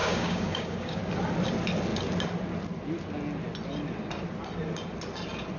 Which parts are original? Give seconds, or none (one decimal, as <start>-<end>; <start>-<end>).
1.0-5.6